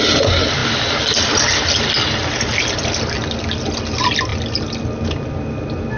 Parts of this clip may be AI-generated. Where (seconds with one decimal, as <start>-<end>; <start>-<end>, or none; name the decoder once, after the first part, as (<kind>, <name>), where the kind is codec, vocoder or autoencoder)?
none